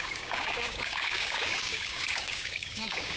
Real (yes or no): no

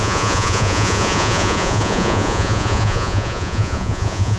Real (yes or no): no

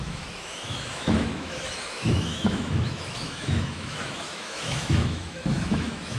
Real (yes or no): no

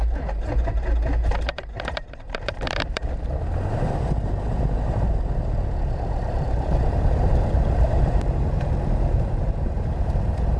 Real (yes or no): no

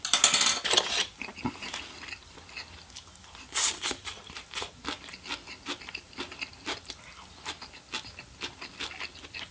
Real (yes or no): yes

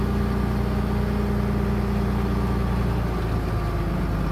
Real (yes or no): yes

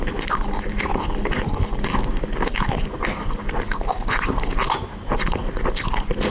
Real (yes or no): yes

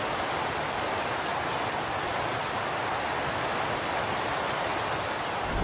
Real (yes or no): yes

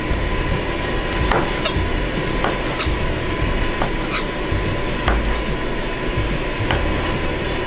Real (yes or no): yes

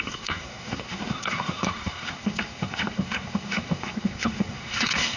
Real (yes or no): no